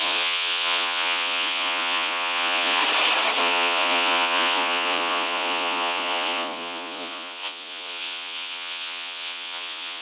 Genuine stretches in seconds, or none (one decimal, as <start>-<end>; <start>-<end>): 2.8-3.4